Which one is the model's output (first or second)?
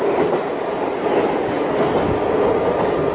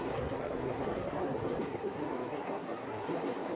second